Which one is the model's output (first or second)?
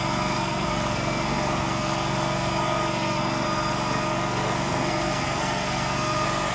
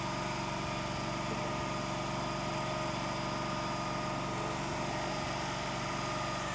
first